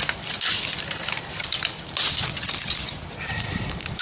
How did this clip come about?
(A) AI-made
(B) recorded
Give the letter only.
B